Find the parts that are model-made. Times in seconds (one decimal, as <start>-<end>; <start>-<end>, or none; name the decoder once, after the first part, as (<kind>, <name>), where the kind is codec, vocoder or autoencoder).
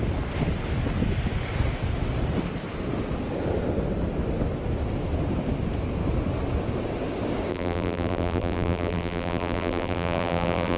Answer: 7.5-10.8 (vocoder, BigVGAN v2)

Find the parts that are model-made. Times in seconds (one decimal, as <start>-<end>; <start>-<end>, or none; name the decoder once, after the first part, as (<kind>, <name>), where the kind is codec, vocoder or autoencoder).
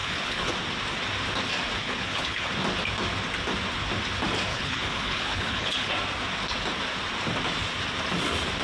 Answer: 0.0-0.5 (codec, HILCodec); 1.8-2.5; 4.5-5.9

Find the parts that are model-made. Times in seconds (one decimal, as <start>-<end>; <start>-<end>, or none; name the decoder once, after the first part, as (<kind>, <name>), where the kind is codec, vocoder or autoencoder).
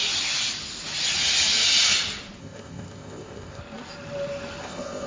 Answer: 2.4-3.6 (codec, ZipCodec); 4.6-5.1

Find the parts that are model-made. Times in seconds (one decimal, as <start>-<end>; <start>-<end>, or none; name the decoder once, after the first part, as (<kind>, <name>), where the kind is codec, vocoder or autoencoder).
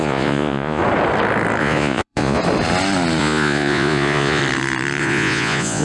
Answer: 0.0-0.8 (vocoder, Vocos); 1.6-2.4; 3.2-4.4; 5.0-5.8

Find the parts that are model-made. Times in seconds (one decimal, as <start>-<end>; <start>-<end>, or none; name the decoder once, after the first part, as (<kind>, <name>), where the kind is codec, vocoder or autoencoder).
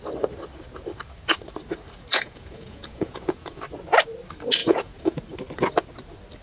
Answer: 2.1-3.6 (vocoder, Vocos); 4.6-5.2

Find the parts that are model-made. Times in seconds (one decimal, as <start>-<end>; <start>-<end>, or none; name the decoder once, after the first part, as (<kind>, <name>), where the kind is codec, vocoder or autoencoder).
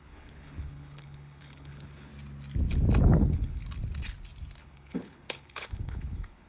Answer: 0.0-2.1 (codec, HILCodec); 3.0-3.6; 4.6-6.5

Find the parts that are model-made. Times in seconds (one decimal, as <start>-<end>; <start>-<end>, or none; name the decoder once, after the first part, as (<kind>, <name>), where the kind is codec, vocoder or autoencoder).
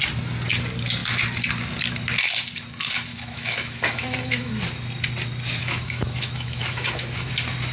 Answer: 3.1-4.5 (autoencoder, DAC-VAE); 5.6-7.3